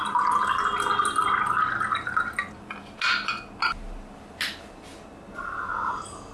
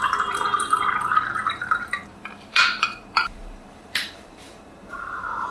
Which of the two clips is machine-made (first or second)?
second